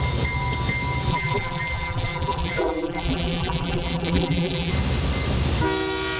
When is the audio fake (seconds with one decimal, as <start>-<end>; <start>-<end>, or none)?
1.1-4.7